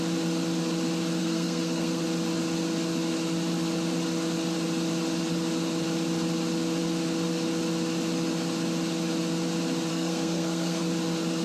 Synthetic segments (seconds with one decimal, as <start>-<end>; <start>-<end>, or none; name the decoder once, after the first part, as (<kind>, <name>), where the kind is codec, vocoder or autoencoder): 1.2-2.0 (codec, SNAC); 9.9-10.8